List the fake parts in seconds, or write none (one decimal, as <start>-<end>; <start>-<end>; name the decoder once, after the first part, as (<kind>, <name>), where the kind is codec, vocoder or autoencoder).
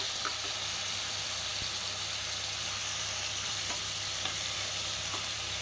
0.0-1.5 (vocoder, BigVGAN v2); 3.3-5.6